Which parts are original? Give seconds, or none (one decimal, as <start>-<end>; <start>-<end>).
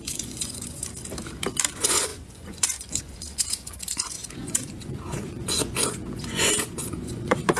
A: 0.8-1.7